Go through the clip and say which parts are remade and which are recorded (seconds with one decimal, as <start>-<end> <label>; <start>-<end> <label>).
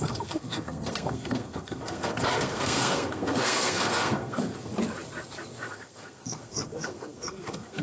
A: 0.0-4.7 remade; 4.7-5.7 recorded; 5.7-7.8 remade